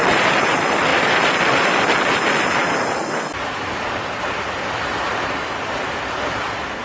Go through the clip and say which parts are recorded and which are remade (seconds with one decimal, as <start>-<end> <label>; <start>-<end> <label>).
0.0-6.8 recorded